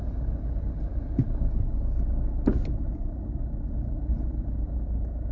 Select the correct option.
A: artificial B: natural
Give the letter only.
B